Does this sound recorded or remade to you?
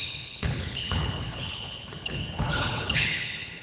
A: remade